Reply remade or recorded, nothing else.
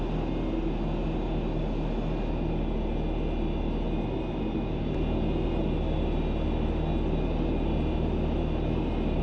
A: recorded